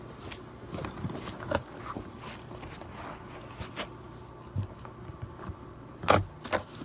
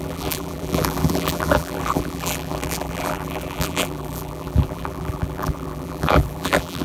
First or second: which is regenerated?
second